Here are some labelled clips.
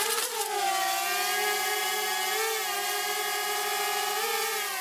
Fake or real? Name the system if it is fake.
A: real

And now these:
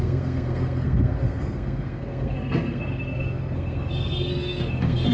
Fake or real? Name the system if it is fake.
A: fake, codec, SNAC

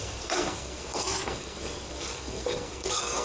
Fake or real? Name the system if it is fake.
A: fake, codec, SNAC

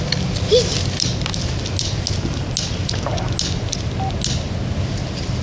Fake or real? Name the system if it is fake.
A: real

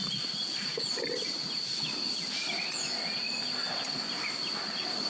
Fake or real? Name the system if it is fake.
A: real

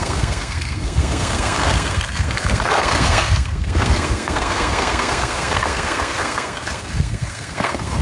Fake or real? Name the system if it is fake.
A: fake, codec, SNAC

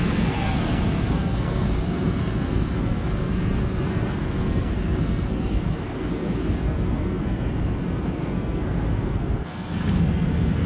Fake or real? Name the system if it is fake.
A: fake, codec, SNAC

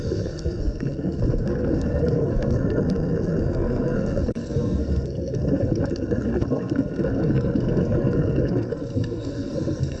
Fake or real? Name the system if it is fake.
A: fake, codec, SNAC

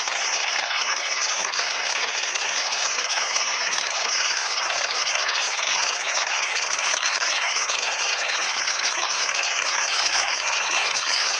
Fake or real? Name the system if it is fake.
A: fake, codec, SNAC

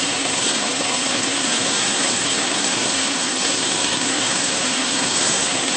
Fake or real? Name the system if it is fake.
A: fake, codec, SNAC